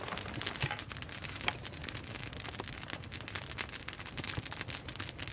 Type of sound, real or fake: real